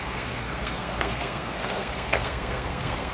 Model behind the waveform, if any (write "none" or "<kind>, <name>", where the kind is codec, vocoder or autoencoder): codec, SNAC